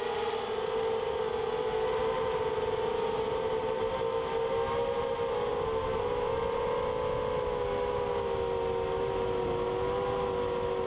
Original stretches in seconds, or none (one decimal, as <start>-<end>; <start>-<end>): 0.0-10.9

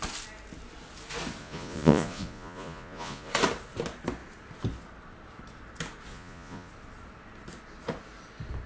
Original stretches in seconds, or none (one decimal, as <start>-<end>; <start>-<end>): 0.0-1.4; 3.3-6.1; 6.7-8.7

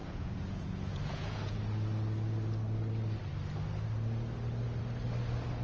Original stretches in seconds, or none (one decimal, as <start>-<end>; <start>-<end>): 1.6-5.6